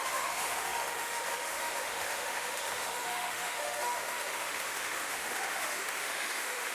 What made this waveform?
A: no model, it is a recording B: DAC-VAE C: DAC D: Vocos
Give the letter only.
B